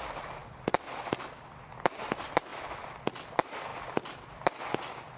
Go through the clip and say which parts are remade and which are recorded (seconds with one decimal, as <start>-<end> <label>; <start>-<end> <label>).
0.0-5.2 recorded